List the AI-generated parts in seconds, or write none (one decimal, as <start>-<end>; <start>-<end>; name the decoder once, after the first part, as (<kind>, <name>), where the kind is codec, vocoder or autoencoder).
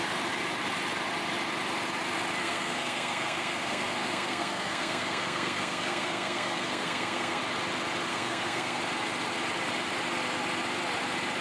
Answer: 2.4-7.4 (codec, SNAC); 8.1-8.8